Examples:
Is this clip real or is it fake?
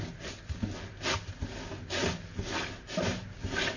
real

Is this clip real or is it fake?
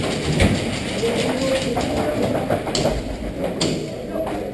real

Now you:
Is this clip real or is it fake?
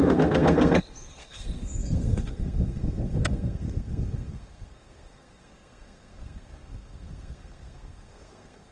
fake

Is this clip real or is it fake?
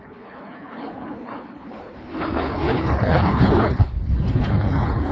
fake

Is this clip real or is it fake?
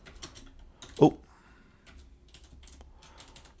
real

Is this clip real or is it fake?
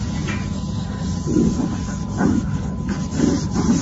real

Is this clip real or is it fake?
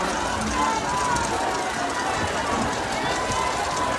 real